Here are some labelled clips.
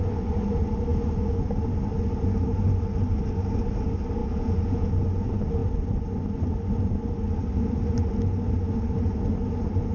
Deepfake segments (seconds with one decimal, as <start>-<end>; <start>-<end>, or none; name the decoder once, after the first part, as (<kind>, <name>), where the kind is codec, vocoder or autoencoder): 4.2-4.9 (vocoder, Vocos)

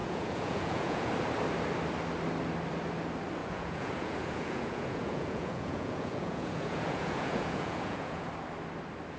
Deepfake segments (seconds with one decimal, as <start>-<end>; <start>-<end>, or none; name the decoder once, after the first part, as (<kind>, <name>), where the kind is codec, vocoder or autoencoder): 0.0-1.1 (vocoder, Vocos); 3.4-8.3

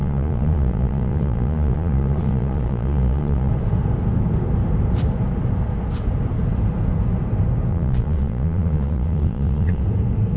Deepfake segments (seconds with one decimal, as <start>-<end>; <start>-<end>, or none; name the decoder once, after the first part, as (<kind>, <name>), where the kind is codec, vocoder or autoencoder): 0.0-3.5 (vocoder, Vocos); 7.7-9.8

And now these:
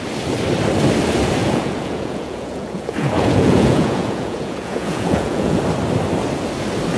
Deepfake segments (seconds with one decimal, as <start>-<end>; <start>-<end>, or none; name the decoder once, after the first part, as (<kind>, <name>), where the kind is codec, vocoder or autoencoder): 1.4-5.6 (vocoder, Vocos)

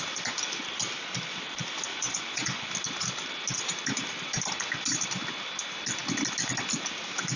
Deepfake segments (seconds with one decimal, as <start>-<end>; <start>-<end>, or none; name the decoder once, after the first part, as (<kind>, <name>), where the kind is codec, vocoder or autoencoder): 1.9-2.7 (vocoder, Vocos)